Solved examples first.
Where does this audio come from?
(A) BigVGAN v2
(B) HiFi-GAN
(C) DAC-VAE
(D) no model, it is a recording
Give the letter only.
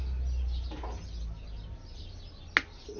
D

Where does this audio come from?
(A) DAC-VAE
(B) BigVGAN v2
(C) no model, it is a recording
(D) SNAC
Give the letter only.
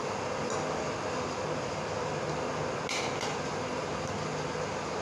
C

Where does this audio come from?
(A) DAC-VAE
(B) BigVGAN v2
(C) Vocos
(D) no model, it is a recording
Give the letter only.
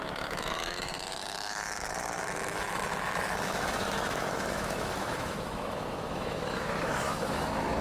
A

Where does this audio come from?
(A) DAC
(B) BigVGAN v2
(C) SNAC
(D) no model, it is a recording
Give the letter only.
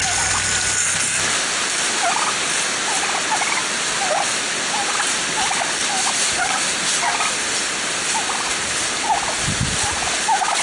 D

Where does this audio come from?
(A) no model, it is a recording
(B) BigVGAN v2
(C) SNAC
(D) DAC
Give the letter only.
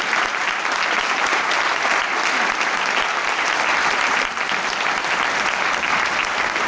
A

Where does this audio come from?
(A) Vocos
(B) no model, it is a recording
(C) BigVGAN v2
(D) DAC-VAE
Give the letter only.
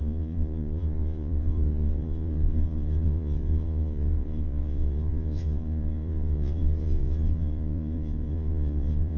A